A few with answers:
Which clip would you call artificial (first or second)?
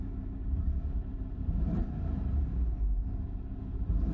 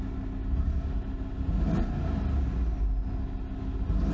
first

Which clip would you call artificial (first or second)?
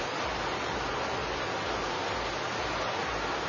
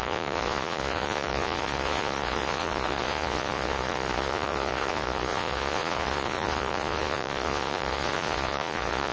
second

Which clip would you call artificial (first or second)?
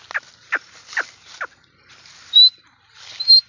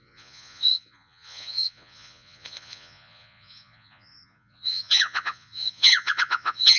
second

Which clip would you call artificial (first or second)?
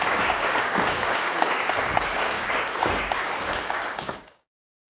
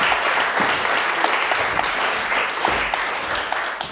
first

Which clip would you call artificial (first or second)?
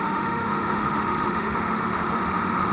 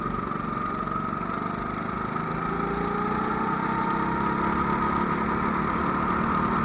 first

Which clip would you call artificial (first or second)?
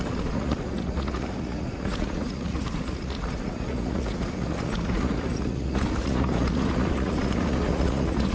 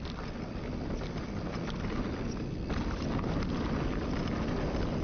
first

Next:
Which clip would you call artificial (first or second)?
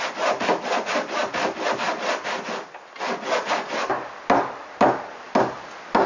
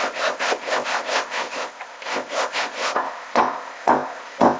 second